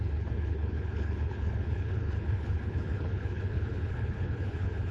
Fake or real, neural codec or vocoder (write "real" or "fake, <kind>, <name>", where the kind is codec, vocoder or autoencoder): fake, codec, HILCodec